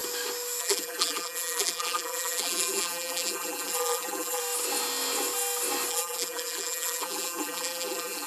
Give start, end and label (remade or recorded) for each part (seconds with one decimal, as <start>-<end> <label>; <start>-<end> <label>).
0.0-0.6 recorded; 0.6-4.4 remade; 4.4-5.9 recorded; 5.9-8.3 remade